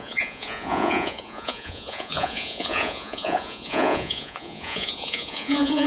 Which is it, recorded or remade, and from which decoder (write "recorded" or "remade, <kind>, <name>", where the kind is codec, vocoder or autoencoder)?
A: remade, vocoder, Vocos